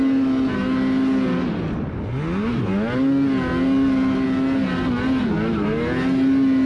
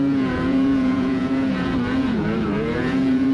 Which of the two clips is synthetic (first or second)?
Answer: second